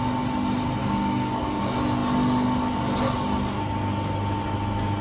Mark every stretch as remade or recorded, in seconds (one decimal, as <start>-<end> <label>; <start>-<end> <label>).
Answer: 0.0-0.8 recorded; 0.8-1.6 remade; 1.6-5.0 recorded